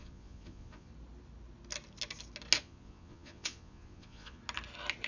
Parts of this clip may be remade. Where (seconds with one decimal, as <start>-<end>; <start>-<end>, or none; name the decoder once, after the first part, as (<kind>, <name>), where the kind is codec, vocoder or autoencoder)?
0.0-0.9 (vocoder, Vocos); 2.6-4.4